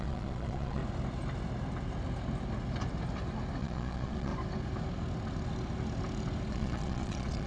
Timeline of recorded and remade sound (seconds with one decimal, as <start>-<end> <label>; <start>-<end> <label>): 0.0-0.8 remade; 0.8-3.6 recorded; 3.6-4.3 remade; 4.3-6.5 recorded; 6.5-7.5 remade